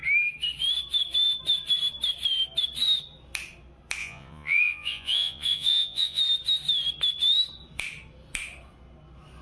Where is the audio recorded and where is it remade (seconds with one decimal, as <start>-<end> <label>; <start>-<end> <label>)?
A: 0.0-4.0 recorded; 4.0-6.2 remade; 6.2-9.4 recorded